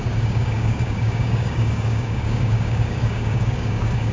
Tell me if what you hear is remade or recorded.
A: remade